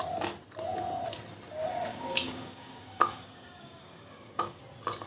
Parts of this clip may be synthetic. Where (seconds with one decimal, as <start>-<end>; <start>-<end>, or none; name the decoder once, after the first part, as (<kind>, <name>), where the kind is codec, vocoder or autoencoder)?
1.9-4.6 (codec, DAC)

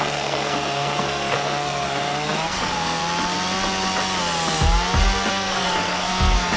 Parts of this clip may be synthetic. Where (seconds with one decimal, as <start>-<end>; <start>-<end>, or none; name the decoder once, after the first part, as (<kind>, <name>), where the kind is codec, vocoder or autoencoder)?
0.0-3.0 (codec, SNAC); 5.3-6.6

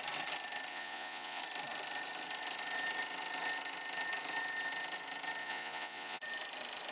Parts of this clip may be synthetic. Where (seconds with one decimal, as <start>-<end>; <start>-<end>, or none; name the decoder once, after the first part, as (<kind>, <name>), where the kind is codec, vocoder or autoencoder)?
0.7-1.4 (vocoder, Vocos); 5.4-6.2